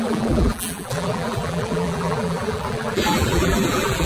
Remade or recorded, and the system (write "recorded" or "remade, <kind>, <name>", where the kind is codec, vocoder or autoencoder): remade, vocoder, BigVGAN v2